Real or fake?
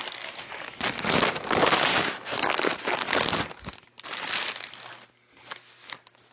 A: real